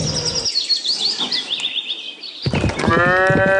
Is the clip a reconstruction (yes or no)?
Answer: no